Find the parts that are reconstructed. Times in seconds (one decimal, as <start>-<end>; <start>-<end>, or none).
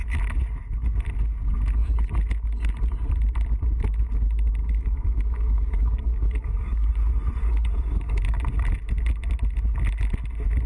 4.6-6.9; 7.4-8.2